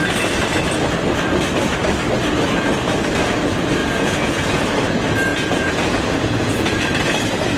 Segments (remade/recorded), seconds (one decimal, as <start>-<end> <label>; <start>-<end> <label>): 0.0-3.8 recorded; 3.8-4.6 remade; 4.6-5.3 recorded; 5.3-6.9 remade; 6.9-7.6 recorded